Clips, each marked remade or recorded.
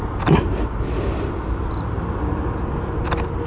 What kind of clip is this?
recorded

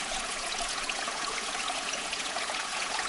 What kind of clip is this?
remade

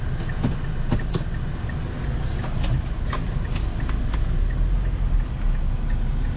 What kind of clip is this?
recorded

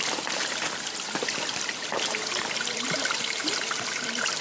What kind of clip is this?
recorded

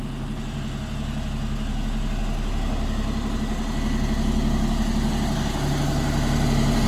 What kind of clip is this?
recorded